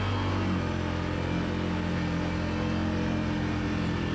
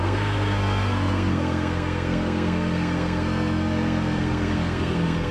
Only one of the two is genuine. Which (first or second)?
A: first